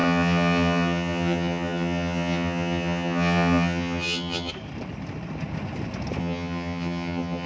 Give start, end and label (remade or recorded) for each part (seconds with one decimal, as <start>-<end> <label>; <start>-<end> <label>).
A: 0.0-4.5 remade; 4.5-6.2 recorded; 6.2-7.5 remade